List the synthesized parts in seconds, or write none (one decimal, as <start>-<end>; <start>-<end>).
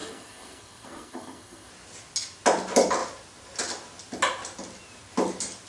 0.0-1.7